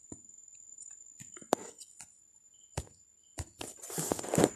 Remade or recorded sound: recorded